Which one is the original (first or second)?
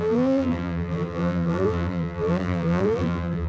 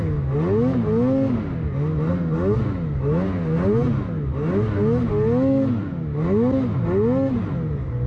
second